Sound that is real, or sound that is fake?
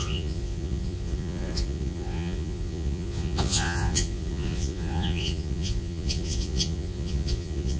fake